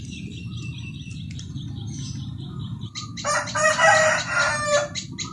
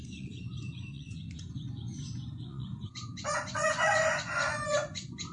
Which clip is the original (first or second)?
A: first